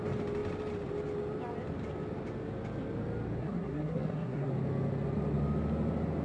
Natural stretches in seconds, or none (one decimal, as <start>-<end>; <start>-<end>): 0.0-3.4; 4.5-6.2